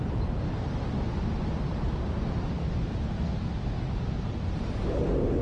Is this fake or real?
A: real